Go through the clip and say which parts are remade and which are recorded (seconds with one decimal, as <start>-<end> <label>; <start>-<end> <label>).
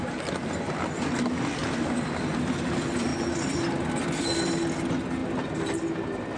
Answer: 0.0-6.4 recorded